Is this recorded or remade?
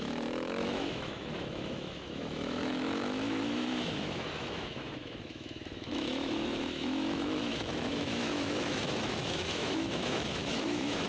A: remade